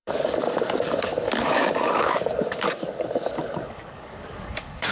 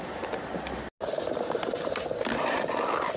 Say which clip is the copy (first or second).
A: first